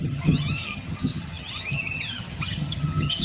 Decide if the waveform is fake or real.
fake